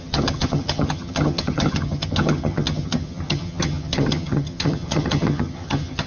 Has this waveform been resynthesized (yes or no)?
yes